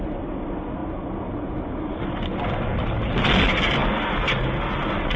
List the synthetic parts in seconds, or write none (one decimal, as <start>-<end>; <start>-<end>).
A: none